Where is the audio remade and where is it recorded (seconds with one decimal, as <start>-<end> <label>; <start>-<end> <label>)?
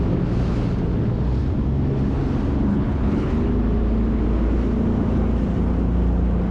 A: 0.0-2.7 recorded; 2.7-3.3 remade; 3.3-6.5 recorded